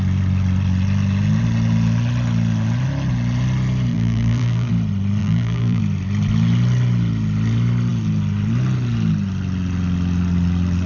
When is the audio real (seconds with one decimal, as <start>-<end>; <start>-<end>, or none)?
0.0-3.9; 4.7-5.2; 5.8-10.9